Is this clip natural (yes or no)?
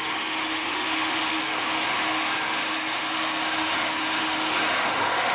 no